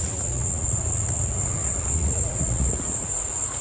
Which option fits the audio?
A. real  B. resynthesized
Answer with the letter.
B